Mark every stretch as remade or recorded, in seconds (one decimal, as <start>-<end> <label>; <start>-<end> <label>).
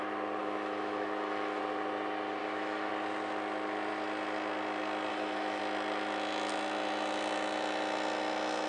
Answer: 0.0-0.4 recorded; 0.4-1.6 remade; 1.6-2.4 recorded; 2.4-2.9 remade; 2.9-5.1 recorded; 5.1-5.6 remade; 5.6-8.7 recorded